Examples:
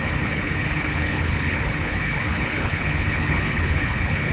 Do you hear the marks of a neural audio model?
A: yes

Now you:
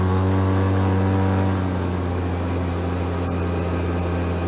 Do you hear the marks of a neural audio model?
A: no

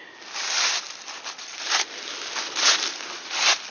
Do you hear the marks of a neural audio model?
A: no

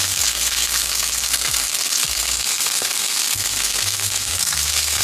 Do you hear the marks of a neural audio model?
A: yes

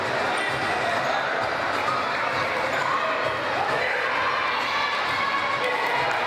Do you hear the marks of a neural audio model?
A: no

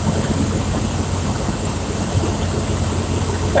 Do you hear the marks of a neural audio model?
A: no